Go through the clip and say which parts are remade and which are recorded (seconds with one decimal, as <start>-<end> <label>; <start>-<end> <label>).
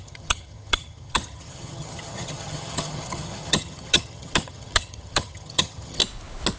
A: 0.0-6.0 remade; 6.0-6.6 recorded